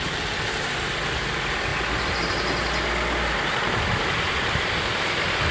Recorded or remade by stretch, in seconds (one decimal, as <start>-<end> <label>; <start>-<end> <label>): 0.0-5.5 recorded